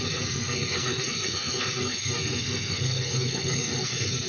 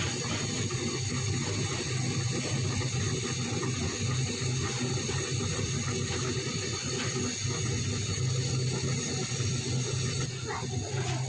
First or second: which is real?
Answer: second